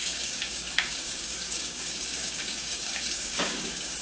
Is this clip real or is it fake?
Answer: fake